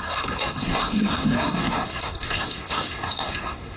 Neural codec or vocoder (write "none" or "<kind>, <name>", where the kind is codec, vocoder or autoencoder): codec, SNAC